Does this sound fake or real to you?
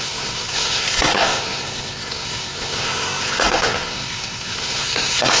fake